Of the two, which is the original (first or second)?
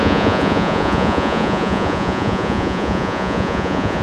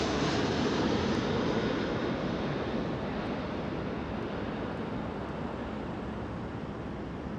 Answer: second